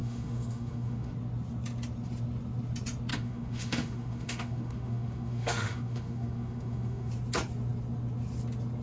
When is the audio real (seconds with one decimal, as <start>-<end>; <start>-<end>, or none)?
1.1-3.1; 7.1-8.8